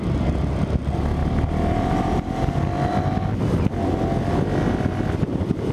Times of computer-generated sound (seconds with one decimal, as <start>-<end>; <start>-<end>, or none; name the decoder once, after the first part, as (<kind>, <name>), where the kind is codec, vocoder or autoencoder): 1.2-2.5 (vocoder, BigVGAN v2)